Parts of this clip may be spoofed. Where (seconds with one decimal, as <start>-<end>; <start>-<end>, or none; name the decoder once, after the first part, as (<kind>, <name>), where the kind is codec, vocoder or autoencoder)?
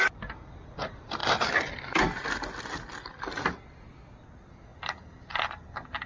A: none